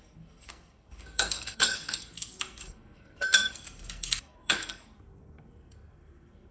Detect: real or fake fake